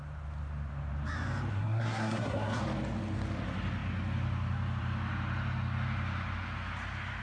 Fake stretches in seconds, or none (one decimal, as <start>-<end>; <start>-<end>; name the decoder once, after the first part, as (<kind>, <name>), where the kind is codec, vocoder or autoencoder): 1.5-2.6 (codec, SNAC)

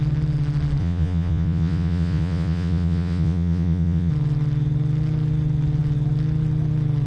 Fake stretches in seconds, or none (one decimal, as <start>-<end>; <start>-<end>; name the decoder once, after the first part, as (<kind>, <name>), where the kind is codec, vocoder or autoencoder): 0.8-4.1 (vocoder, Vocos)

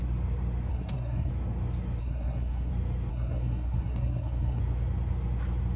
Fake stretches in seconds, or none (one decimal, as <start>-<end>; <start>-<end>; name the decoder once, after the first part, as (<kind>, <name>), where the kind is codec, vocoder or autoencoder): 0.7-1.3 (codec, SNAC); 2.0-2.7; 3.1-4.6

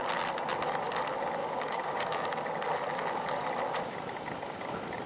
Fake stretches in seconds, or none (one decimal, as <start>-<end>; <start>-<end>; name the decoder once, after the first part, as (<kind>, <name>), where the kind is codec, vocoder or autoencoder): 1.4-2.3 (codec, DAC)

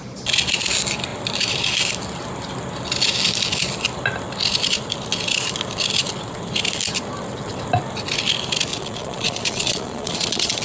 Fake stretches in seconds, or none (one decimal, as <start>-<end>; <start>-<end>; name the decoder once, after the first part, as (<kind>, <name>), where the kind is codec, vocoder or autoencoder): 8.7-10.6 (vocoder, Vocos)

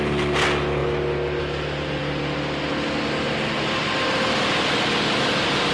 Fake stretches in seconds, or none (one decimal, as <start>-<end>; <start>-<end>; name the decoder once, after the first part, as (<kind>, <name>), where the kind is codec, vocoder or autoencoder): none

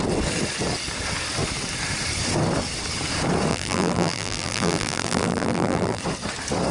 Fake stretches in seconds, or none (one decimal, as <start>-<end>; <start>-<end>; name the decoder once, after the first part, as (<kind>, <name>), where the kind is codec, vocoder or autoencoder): 3.5-6.0 (vocoder, BigVGAN v2)